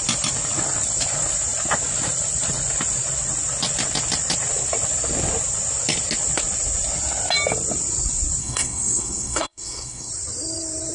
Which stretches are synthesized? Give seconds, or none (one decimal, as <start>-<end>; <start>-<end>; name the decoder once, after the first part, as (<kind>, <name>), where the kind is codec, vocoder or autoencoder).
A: 8.4-10.1 (codec, SNAC)